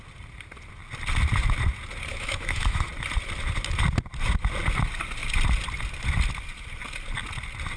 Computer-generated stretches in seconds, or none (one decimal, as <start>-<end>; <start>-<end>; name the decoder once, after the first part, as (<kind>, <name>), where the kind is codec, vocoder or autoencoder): 2.1-2.9 (autoencoder, DAC-VAE)